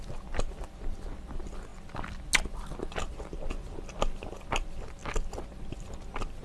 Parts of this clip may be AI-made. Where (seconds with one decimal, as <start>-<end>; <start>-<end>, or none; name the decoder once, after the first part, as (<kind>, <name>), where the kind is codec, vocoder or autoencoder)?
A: none